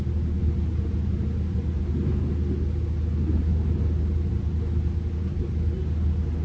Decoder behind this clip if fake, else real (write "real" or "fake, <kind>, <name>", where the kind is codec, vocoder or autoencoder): real